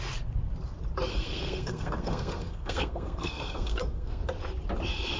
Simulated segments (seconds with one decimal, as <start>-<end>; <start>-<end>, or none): 1.1-4.2